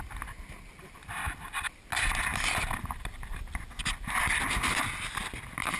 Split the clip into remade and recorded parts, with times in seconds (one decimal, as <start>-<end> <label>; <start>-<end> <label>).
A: 0.0-5.8 recorded